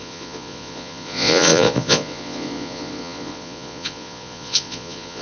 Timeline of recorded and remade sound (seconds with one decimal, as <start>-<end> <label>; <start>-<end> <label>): 0.0-5.2 remade